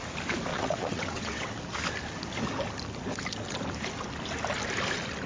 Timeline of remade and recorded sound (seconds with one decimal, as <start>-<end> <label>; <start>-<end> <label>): 0.0-0.5 recorded; 0.5-1.6 remade; 1.6-5.3 recorded